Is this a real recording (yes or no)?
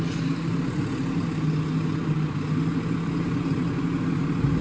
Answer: yes